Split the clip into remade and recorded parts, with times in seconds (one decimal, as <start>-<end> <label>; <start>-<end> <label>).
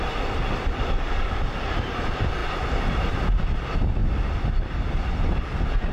0.0-5.9 recorded